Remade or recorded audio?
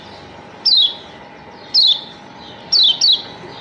recorded